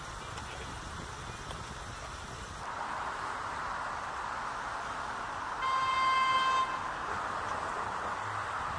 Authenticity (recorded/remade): recorded